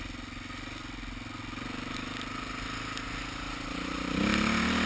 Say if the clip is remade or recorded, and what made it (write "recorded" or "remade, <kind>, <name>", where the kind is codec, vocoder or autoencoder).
recorded